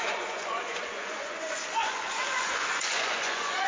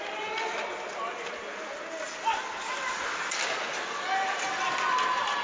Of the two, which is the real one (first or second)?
second